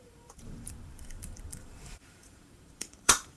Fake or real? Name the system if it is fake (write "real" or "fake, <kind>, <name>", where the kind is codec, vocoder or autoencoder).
fake, vocoder, BigVGAN v2